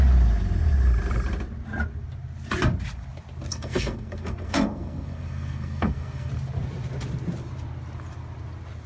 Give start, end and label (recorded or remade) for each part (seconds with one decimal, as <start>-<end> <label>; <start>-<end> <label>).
0.0-3.5 recorded; 3.5-6.3 remade; 6.3-8.9 recorded